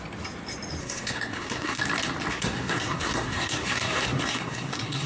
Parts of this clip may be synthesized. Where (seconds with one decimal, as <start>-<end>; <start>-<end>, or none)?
0.8-1.8; 2.3-5.1